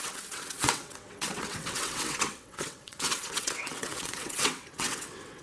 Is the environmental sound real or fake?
fake